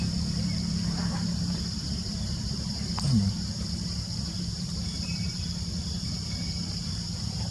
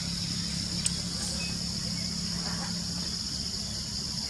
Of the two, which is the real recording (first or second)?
second